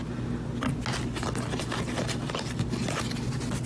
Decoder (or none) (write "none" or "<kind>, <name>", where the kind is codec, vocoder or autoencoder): none